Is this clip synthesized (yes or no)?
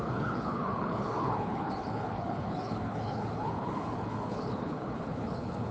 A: yes